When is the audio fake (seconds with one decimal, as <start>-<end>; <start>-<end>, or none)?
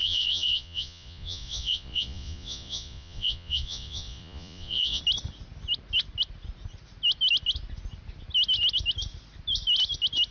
0.0-5.0